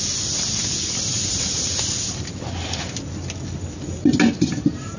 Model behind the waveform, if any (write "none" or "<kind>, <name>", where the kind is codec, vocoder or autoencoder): none